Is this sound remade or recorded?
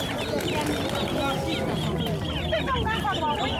recorded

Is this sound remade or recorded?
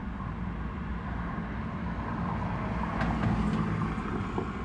recorded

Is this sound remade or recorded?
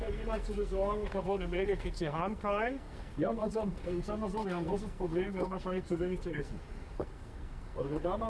remade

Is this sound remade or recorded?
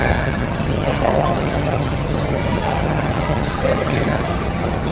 remade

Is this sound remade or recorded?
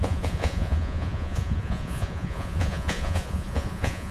remade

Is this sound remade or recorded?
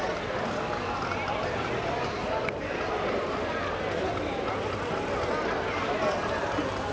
recorded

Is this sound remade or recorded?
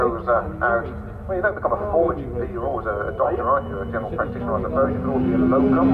recorded